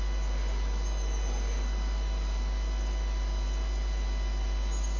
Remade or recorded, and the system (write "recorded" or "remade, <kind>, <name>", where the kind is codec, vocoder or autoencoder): recorded